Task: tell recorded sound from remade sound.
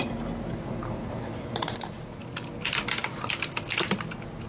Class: recorded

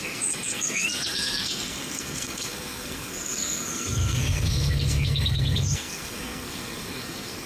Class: remade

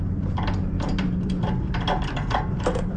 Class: remade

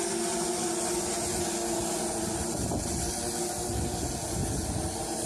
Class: recorded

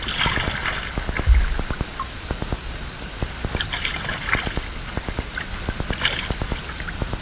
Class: recorded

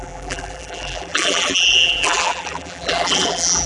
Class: remade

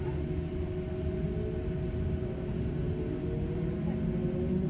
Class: recorded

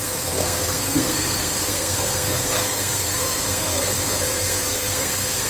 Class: remade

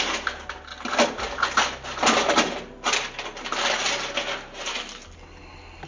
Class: recorded